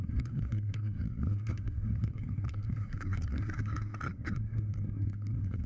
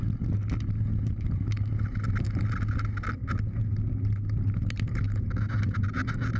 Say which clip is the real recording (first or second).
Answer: second